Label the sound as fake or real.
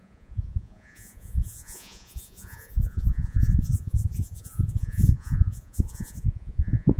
fake